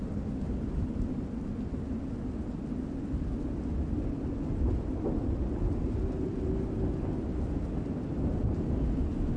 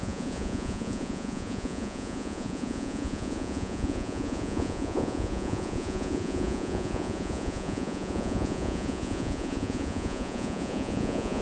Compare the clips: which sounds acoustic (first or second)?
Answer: first